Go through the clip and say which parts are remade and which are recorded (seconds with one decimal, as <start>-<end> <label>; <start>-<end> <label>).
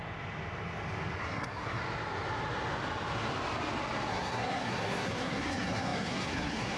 0.0-1.2 recorded; 1.2-1.8 remade; 1.8-4.1 recorded; 4.1-6.8 remade